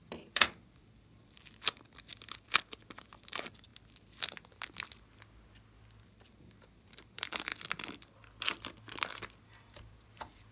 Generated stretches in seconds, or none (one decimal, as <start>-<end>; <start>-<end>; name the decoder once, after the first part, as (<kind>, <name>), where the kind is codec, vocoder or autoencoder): 0.0-2.1 (vocoder, BigVGAN v2); 3.3-3.7; 6.4-7.5; 9.6-10.5